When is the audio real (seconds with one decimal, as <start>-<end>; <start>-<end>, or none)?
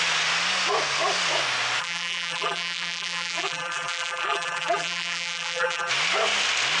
0.0-1.8; 5.9-6.8